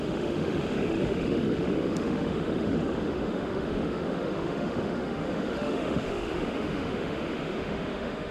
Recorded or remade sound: remade